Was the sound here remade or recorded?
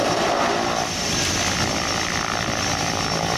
recorded